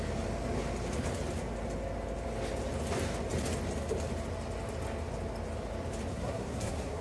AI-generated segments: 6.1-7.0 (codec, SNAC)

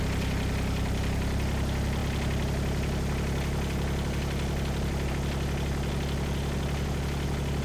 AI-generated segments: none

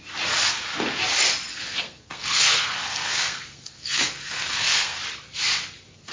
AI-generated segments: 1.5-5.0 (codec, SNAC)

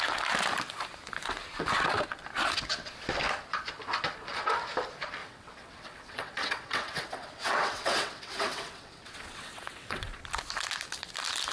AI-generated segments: 5.2-10.2 (vocoder, WaveNeXt)

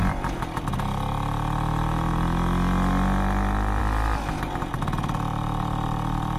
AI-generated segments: none

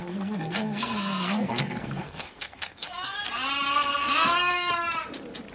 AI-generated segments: 0.0-3.3 (codec, SNAC); 3.7-4.7